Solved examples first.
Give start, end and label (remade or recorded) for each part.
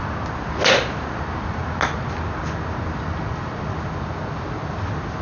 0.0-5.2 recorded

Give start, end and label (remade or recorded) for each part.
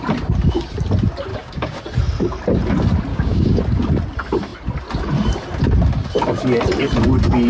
0.0-1.3 recorded; 1.3-1.8 remade; 1.8-3.1 recorded; 3.1-3.6 remade; 3.6-7.5 recorded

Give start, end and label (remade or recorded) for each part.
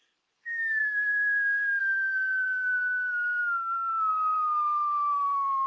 0.0-0.8 remade; 0.8-1.8 recorded; 1.8-3.4 remade; 3.4-4.1 recorded; 4.1-5.7 remade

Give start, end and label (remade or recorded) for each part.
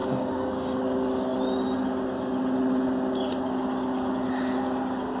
0.0-0.8 remade; 0.8-5.2 recorded